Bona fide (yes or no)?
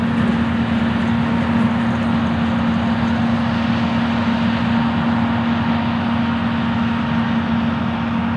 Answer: yes